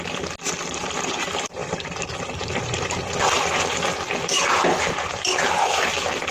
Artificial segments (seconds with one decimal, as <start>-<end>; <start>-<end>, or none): none